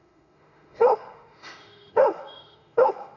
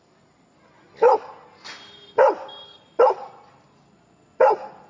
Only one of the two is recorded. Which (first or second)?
second